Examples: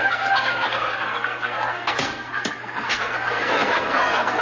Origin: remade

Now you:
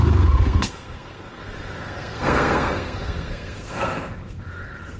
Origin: remade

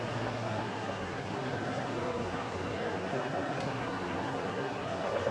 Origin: remade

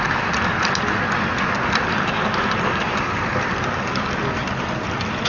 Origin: recorded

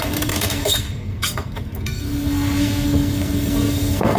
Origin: remade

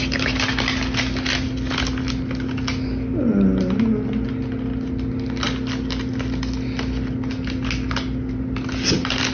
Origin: recorded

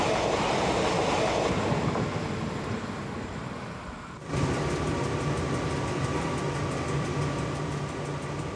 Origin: recorded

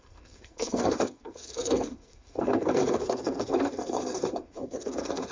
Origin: remade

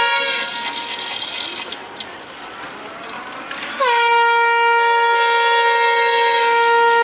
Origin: recorded